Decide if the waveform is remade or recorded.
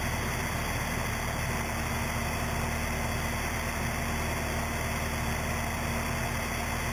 recorded